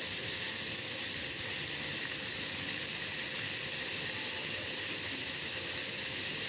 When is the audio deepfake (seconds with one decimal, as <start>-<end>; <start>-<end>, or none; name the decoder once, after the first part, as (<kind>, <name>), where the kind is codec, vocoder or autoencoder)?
none